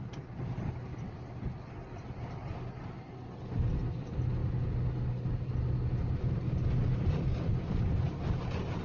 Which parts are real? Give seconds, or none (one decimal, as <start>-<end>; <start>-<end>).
0.0-8.8

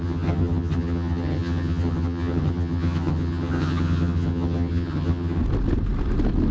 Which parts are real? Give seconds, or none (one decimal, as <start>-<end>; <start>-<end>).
5.4-6.5

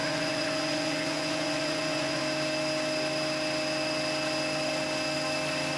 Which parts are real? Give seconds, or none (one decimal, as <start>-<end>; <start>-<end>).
2.2-5.8

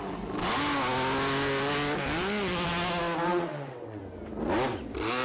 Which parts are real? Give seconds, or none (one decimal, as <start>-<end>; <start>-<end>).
0.0-3.3; 4.0-5.2